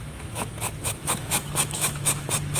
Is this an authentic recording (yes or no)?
no